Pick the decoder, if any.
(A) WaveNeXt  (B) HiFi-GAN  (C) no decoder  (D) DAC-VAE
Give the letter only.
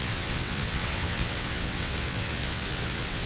A